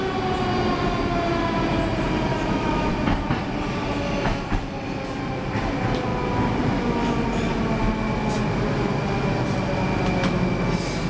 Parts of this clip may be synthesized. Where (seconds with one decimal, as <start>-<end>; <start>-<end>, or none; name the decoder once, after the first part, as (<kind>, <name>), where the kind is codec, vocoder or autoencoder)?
2.3-2.9 (autoencoder, DAC-VAE)